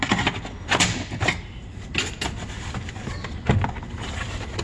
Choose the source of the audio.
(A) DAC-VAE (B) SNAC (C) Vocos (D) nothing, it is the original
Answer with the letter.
D